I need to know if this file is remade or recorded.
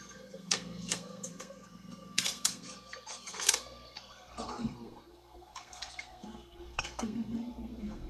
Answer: remade